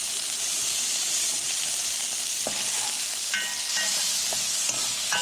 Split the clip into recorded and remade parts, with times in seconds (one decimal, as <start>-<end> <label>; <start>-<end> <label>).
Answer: 0.0-5.2 recorded